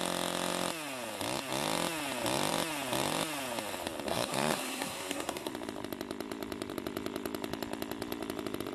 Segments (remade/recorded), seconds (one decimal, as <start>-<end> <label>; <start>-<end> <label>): 0.0-4.1 recorded; 4.1-5.5 remade; 5.5-8.7 recorded